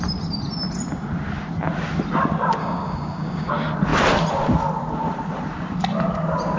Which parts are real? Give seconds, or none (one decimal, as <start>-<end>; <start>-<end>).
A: 0.0-2.6; 3.5-6.6

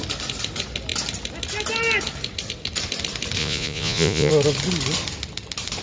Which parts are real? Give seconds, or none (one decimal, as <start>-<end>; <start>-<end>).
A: 0.0-3.4; 4.3-5.8

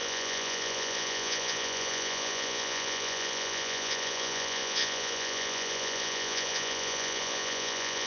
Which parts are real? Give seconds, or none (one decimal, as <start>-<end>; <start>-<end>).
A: none

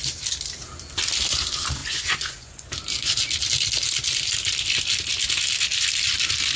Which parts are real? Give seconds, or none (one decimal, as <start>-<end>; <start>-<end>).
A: 0.0-1.8; 2.7-6.6

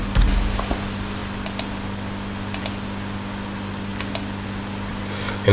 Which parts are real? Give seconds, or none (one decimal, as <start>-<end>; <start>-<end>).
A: 0.0-5.5